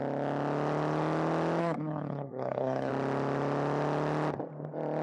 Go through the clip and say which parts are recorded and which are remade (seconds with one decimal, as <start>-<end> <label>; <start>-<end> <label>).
0.0-1.6 recorded; 1.6-2.9 remade; 2.9-5.0 recorded